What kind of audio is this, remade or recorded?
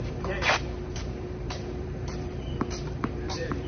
remade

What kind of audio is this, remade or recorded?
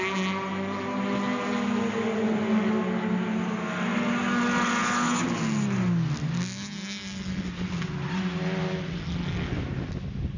recorded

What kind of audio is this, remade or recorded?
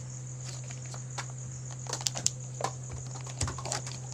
recorded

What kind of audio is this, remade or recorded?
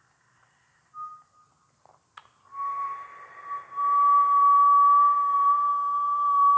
recorded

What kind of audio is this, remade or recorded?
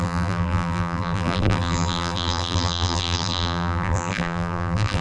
remade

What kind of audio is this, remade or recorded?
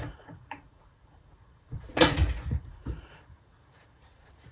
remade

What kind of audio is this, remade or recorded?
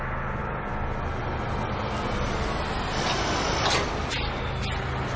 recorded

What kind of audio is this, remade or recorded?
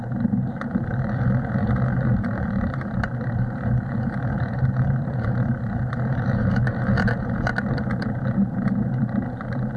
remade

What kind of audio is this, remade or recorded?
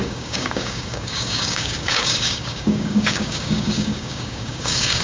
remade